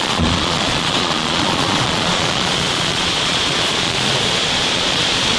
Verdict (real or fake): fake